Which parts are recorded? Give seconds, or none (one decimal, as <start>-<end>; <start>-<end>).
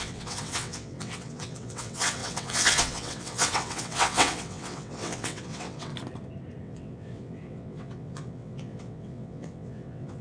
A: 5.9-6.6